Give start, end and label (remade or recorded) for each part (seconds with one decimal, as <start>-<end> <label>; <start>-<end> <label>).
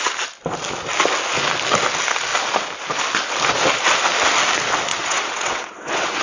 0.0-4.9 recorded; 4.9-6.2 remade